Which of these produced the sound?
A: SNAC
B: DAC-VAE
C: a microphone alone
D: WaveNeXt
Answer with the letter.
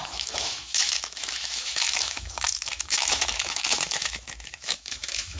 B